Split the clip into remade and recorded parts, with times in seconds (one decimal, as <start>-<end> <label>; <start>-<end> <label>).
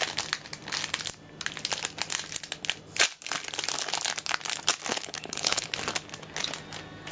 0.0-4.9 recorded; 4.9-5.7 remade; 5.7-7.1 recorded